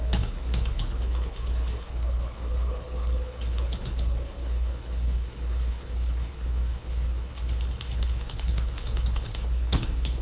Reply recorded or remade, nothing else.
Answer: remade